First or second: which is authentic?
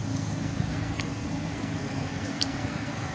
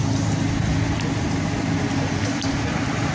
second